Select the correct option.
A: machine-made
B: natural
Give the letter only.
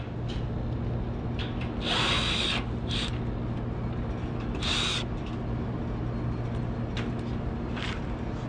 B